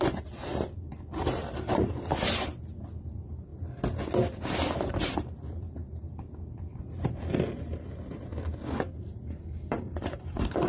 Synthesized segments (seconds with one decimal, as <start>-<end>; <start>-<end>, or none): 0.0-3.5; 4.9-8.3; 9.0-10.7